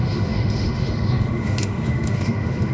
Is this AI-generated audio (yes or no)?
yes